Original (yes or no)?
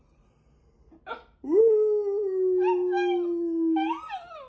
yes